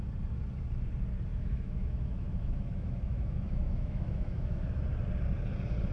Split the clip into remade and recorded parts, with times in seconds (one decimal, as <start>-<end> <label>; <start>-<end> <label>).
0.0-1.3 recorded; 1.3-4.8 remade; 4.8-5.9 recorded